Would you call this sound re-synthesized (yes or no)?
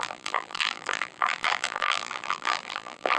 yes